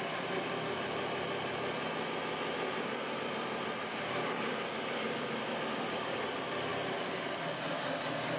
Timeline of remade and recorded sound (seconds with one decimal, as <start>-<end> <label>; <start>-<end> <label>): 0.0-3.9 recorded; 3.9-6.2 remade; 6.2-8.4 recorded